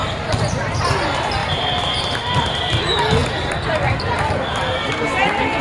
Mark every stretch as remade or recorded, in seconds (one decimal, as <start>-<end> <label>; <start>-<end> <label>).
0.0-0.8 remade; 0.8-5.6 recorded